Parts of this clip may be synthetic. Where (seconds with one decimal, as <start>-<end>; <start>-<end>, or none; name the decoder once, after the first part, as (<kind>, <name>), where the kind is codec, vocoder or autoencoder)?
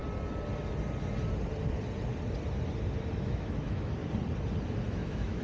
3.2-4.0 (autoencoder, DAC-VAE); 4.8-5.4